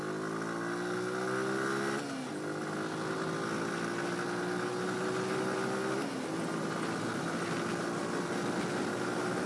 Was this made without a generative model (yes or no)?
yes